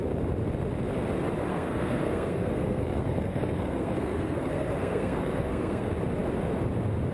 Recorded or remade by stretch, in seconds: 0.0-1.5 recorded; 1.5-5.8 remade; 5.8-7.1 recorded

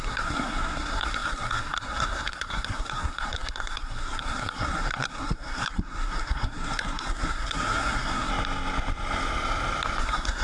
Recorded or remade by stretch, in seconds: 0.0-8.3 remade; 8.3-10.0 recorded; 10.0-10.4 remade

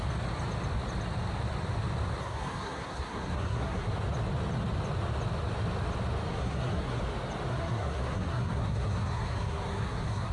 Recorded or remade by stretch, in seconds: 0.0-2.2 recorded; 2.2-3.9 remade; 3.9-6.3 recorded; 6.3-7.0 remade; 7.0-7.5 recorded; 7.5-10.3 remade

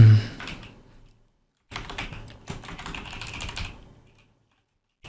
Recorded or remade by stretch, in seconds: 0.0-5.1 recorded

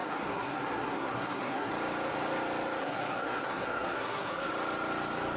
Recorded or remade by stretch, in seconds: 0.0-1.7 remade; 1.7-2.8 recorded; 2.8-4.5 remade; 4.5-5.4 recorded

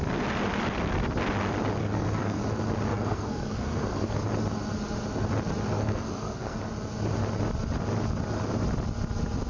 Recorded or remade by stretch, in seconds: 0.0-1.8 recorded; 1.8-2.4 remade; 2.4-2.9 recorded; 2.9-4.3 remade; 4.3-5.7 recorded; 5.7-6.6 remade; 6.6-9.5 recorded

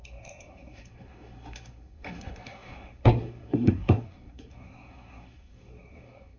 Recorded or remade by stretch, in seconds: 0.0-6.4 remade

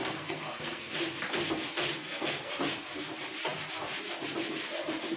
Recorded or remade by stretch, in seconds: 0.0-0.9 remade; 0.9-2.0 recorded; 2.0-2.5 remade; 2.5-5.2 recorded